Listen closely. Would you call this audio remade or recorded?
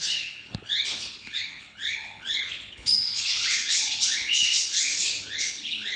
remade